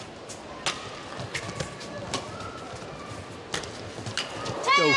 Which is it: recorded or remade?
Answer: recorded